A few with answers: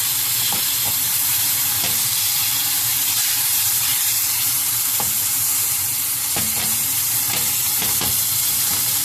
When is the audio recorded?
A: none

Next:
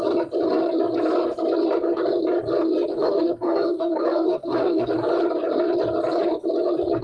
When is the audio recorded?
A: 0.0-2.9; 4.9-7.0

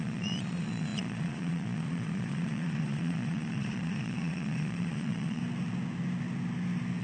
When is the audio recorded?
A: 5.4-7.0

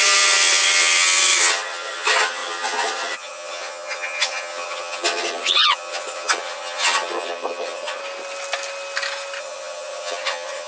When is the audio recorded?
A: 8.0-9.4

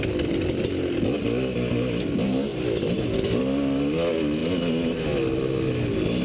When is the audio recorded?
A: 0.0-6.2